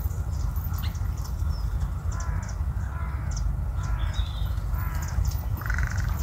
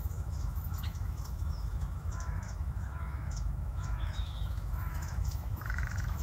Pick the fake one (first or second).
second